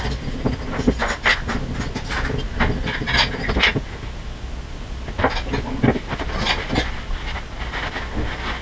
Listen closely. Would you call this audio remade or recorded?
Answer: recorded